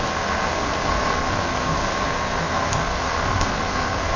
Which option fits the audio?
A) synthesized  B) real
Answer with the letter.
A